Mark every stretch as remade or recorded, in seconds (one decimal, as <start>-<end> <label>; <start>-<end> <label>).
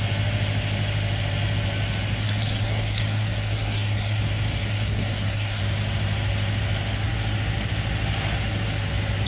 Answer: 0.0-2.2 recorded; 2.2-4.2 remade; 4.2-4.7 recorded; 4.7-5.6 remade; 5.6-9.3 recorded